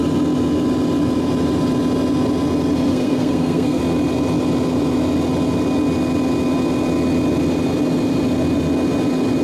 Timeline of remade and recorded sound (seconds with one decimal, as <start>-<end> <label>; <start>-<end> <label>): 0.0-2.9 recorded; 2.9-3.8 remade; 3.8-9.4 recorded